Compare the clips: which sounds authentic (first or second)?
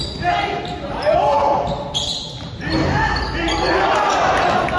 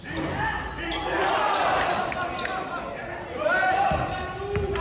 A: first